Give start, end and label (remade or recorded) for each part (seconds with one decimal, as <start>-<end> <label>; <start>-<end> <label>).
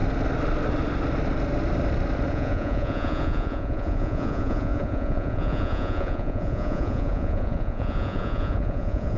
0.0-2.3 recorded; 2.3-9.2 remade